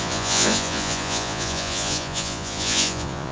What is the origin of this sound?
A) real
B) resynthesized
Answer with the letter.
B